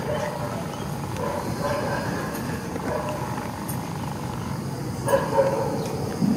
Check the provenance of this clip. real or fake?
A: real